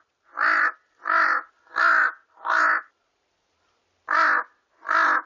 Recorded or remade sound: recorded